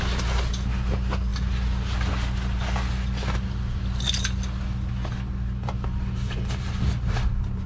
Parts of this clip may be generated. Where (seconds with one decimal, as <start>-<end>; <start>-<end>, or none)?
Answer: none